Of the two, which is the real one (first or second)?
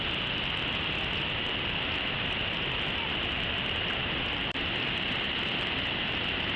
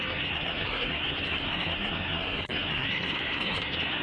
first